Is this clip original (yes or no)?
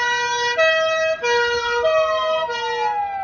yes